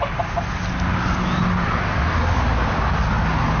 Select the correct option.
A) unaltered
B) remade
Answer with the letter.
A